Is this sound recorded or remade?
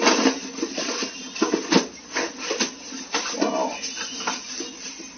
recorded